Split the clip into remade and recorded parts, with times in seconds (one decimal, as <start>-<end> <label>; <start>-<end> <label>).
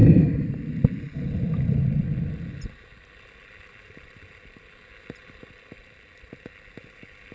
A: 0.0-0.7 remade; 0.7-7.3 recorded